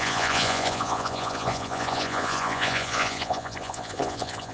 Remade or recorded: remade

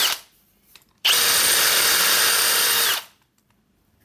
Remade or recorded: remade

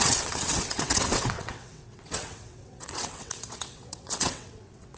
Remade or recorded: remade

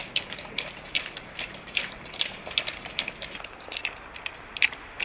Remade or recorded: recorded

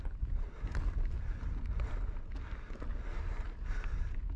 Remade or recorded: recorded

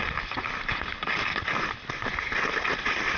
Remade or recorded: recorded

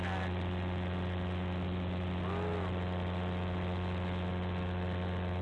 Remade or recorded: recorded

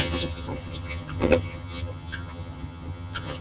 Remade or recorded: remade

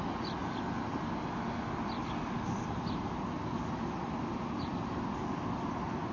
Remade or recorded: recorded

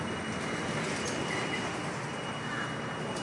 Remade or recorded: recorded